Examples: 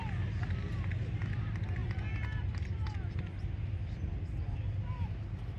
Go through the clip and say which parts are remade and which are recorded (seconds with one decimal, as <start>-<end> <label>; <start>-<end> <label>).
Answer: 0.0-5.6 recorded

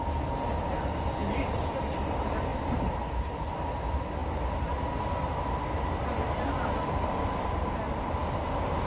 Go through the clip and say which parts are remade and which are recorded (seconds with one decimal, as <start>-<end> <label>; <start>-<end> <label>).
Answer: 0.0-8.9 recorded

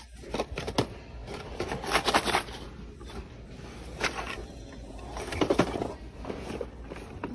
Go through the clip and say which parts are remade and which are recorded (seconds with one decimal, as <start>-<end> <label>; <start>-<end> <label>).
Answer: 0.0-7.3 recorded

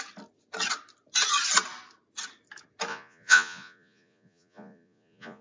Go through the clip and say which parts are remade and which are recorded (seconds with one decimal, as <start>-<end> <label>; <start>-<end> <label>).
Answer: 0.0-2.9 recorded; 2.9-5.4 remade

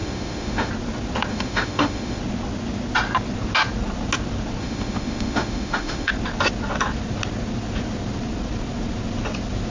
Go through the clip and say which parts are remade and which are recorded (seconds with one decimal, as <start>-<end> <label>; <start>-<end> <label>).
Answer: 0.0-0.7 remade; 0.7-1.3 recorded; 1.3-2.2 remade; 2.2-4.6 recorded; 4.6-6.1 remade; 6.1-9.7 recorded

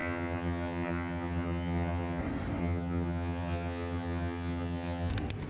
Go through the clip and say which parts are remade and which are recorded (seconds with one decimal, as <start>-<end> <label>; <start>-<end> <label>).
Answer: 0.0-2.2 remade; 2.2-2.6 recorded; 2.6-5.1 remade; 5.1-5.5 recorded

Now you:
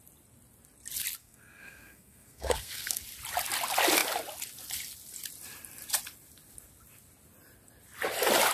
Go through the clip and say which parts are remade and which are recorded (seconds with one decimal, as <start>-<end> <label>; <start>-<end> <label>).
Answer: 0.0-1.2 recorded; 1.2-3.0 remade; 3.0-8.5 recorded

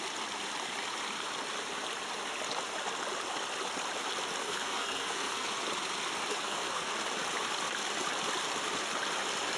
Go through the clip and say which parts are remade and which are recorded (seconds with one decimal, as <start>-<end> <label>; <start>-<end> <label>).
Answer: 0.0-4.4 recorded; 4.4-5.5 remade; 5.5-6.3 recorded; 6.3-6.9 remade; 6.9-9.6 recorded